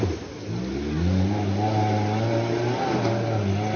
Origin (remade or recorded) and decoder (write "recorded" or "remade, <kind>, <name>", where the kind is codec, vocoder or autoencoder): recorded